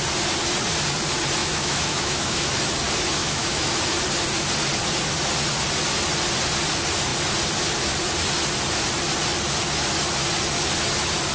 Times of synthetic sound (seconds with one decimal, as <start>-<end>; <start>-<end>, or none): 1.4-2.5; 3.2-3.7